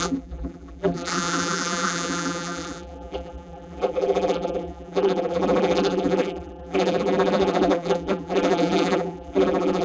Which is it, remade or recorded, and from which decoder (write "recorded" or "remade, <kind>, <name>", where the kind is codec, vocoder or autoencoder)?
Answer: remade, vocoder, BigVGAN v2